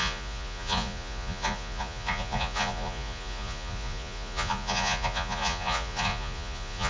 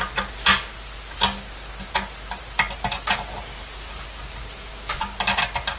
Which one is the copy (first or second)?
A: first